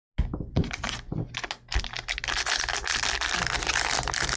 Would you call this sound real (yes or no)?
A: yes